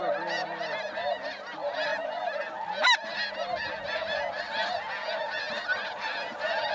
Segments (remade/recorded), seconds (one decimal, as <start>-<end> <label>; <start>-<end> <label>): 0.0-1.9 recorded; 1.9-2.4 remade; 2.4-6.7 recorded